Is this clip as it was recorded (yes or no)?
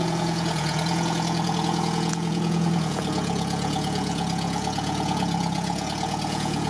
no